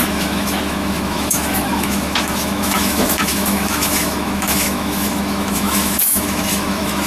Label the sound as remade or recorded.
remade